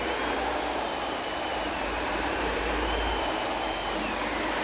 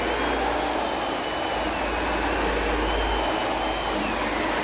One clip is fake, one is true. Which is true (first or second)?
second